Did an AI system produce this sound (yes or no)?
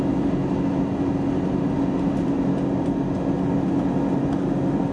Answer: no